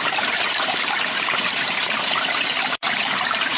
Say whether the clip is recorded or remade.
remade